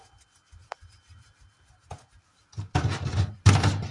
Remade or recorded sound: recorded